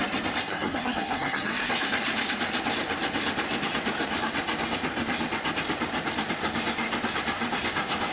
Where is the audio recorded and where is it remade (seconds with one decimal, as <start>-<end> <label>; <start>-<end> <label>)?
0.0-0.4 recorded; 0.4-1.7 remade; 1.7-8.1 recorded